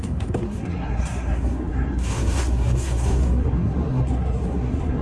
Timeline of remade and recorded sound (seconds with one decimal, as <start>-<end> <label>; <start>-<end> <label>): 0.0-5.0 remade